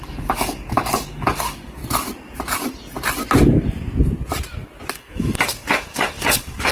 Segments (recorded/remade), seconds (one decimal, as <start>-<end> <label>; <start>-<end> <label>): 0.0-1.8 remade; 1.8-4.9 recorded; 4.9-6.7 remade